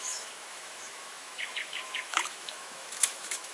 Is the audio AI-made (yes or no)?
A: yes